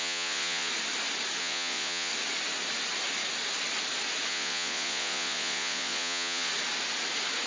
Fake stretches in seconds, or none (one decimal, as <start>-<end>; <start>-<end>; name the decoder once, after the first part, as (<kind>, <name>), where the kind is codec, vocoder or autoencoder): 0.0-0.7 (vocoder, Vocos); 1.4-2.1; 4.3-6.5